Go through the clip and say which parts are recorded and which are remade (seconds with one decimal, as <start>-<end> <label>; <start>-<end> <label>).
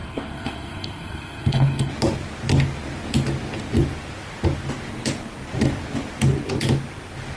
0.0-1.9 remade; 1.9-7.4 recorded